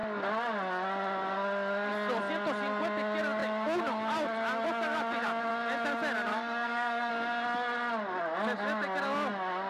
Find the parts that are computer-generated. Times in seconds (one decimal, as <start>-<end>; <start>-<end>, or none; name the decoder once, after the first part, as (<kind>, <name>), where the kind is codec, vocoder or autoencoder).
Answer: 6.3-7.1 (codec, SNAC)